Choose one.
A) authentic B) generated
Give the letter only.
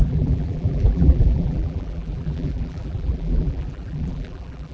B